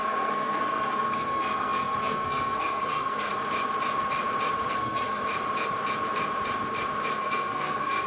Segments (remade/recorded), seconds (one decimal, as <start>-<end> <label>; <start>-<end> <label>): 0.0-3.3 remade; 3.3-4.7 recorded; 4.7-5.2 remade; 5.2-7.2 recorded; 7.2-8.1 remade